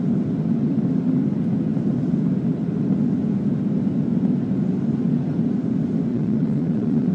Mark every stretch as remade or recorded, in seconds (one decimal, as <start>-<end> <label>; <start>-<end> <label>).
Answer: 0.0-6.1 recorded; 6.1-7.1 remade